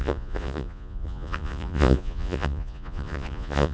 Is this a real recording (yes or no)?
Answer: no